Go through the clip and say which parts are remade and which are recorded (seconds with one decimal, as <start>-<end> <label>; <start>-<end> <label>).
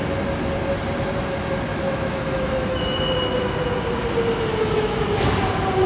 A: 0.0-1.7 recorded; 1.7-3.0 remade; 3.0-4.6 recorded; 4.6-5.2 remade; 5.2-5.9 recorded